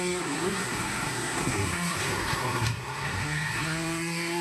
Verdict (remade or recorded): remade